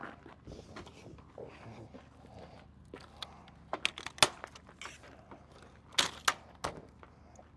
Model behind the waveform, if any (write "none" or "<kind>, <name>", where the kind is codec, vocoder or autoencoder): none